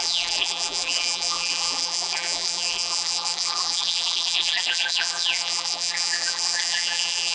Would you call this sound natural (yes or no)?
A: no